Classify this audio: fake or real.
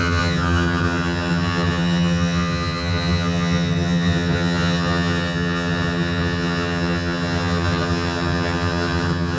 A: fake